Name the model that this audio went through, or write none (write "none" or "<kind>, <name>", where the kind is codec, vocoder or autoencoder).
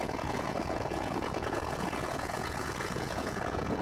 vocoder, Vocos